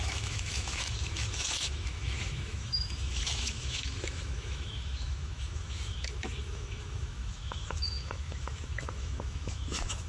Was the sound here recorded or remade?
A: remade